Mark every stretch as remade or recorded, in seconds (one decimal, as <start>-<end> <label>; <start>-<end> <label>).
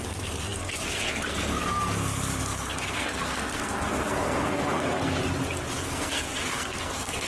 0.0-5.2 remade; 5.2-5.7 recorded; 5.7-7.3 remade